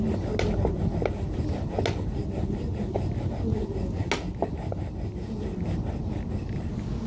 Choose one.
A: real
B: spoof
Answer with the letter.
A